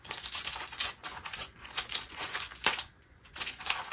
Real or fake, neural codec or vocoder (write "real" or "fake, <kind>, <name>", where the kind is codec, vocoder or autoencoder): fake, vocoder, Vocos